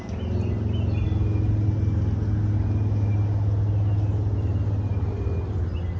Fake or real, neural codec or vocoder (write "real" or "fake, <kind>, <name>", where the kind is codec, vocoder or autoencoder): real